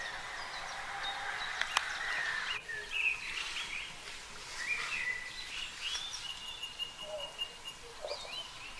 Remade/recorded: recorded